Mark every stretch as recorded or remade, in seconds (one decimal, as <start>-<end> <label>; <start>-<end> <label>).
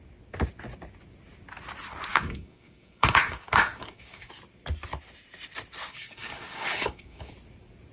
0.0-2.1 recorded; 2.1-4.3 remade; 4.3-5.9 recorded; 5.9-7.3 remade; 7.3-7.9 recorded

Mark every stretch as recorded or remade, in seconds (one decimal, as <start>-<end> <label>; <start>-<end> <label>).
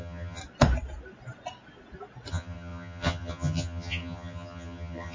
0.0-0.4 remade; 0.4-2.3 recorded; 2.3-5.1 remade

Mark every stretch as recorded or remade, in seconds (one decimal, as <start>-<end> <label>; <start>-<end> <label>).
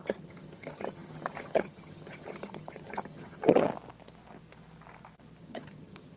0.0-3.7 remade; 3.7-5.4 recorded; 5.4-6.2 remade